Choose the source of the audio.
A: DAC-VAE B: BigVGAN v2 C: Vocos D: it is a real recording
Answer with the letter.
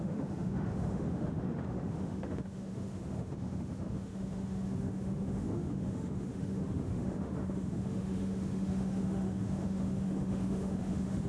A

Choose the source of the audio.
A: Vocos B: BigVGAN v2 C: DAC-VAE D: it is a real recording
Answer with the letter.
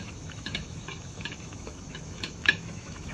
C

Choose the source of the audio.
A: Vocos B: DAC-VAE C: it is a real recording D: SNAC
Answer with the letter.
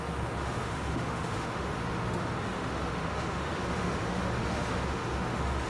B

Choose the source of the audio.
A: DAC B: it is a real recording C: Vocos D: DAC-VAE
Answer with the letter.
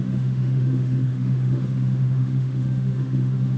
D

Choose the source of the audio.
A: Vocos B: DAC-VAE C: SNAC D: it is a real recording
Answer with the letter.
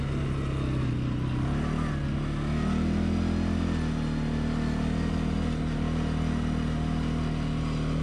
D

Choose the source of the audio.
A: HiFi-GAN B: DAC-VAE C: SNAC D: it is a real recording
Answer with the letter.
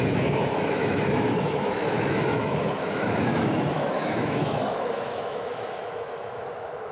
B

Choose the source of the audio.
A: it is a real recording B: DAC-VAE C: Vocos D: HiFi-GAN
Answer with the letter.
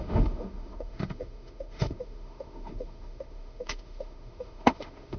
B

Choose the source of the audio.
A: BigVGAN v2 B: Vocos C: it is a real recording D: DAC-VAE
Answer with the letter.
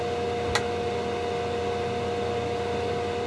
C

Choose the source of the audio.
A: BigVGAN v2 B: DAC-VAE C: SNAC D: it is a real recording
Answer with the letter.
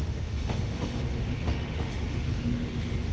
B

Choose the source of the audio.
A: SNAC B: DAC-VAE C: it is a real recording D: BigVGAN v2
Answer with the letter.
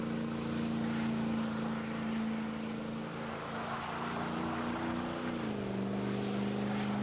C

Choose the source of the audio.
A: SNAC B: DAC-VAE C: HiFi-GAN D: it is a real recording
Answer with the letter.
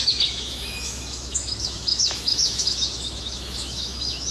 B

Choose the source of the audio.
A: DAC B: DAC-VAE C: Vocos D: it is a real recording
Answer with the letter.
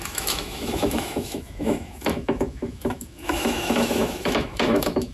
B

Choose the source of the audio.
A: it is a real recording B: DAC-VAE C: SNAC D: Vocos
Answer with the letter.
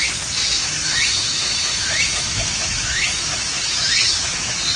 B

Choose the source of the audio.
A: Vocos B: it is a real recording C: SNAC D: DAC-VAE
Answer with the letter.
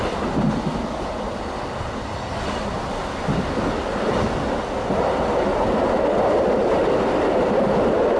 B